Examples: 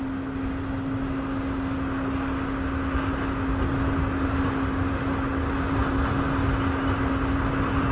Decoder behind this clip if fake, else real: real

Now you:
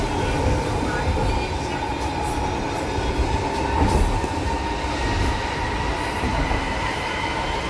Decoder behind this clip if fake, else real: real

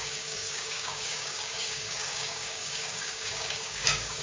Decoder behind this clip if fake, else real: fake, codec, DAC